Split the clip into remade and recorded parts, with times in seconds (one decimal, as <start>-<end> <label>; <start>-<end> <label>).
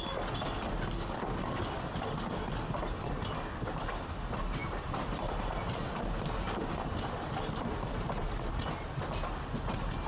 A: 0.0-4.6 recorded; 4.6-8.7 remade; 8.7-10.1 recorded